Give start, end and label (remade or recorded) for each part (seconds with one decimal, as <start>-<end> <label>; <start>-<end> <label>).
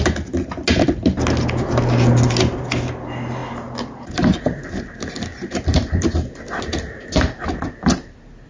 0.0-5.3 recorded; 5.3-6.1 remade; 6.1-8.5 recorded